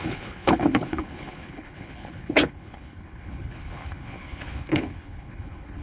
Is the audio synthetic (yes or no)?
yes